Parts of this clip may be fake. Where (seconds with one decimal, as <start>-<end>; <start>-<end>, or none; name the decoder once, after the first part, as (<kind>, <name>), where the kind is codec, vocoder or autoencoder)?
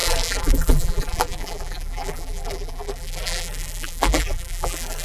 0.0-5.0 (vocoder, BigVGAN v2)